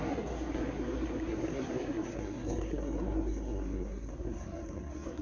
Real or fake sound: fake